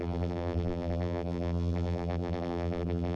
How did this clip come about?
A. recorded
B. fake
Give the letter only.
B